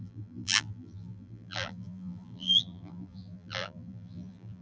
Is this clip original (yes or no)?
no